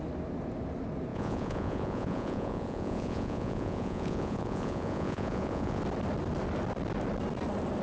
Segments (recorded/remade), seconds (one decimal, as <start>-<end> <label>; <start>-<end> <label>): 0.0-1.1 recorded; 1.1-5.8 remade; 5.8-7.8 recorded